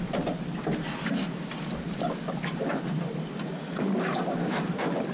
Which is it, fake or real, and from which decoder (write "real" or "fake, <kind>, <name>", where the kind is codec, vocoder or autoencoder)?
real